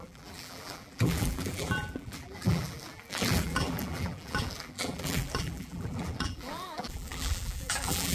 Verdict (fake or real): fake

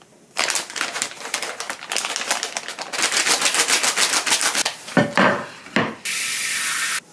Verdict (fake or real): real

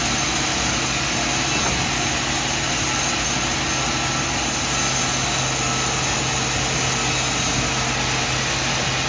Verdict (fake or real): real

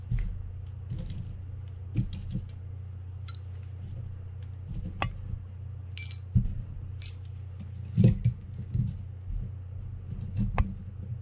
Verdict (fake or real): real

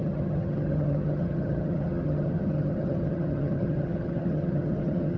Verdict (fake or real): fake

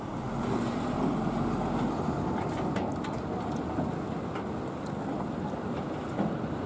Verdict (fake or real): real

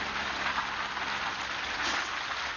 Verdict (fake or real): real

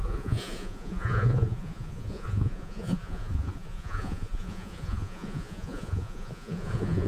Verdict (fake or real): fake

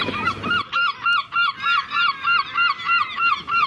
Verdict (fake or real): real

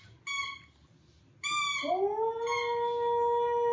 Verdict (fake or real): real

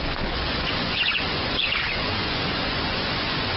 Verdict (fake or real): fake